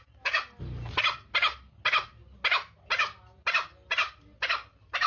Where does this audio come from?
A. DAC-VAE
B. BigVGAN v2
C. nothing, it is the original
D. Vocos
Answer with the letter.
C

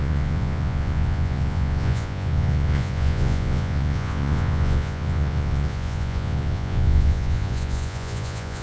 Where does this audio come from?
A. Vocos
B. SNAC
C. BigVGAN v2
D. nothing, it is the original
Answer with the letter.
A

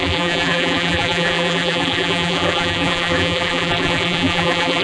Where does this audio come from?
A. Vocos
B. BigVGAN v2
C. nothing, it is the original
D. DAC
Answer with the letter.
B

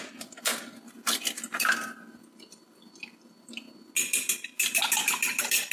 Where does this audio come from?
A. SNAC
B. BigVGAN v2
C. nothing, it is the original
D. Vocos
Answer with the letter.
C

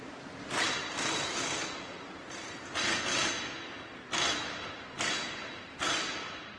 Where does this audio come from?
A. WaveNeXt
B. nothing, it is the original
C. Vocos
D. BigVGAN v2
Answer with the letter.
B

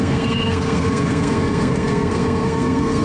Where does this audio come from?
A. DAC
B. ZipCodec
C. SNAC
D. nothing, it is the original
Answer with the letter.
C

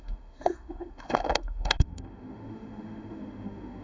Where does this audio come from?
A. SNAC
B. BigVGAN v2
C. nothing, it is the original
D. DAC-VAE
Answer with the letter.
D